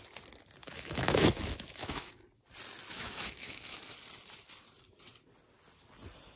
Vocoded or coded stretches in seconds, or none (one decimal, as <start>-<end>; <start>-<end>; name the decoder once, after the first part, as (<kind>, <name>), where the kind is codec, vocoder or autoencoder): 0.6-2.1 (autoencoder, DAC-VAE); 2.9-3.8